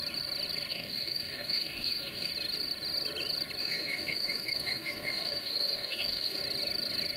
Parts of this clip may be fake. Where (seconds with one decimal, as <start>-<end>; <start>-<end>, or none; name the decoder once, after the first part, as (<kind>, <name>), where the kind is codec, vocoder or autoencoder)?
0.7-2.3 (codec, DAC); 3.6-6.4